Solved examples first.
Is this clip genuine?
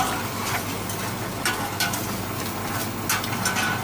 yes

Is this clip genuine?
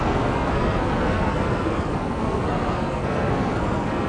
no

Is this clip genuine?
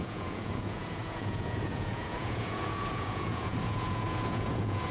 no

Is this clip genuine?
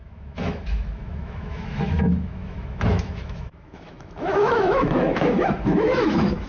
no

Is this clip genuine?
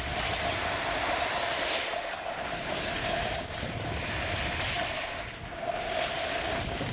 yes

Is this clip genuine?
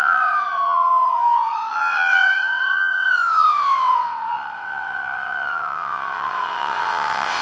no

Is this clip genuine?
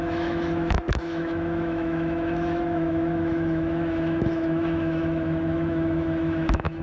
no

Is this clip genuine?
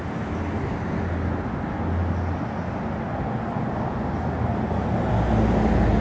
yes